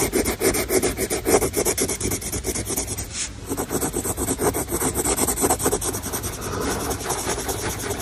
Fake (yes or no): no